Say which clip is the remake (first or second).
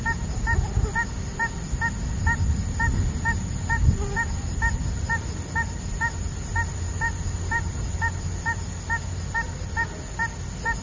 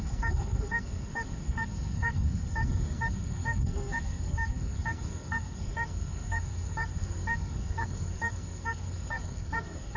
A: second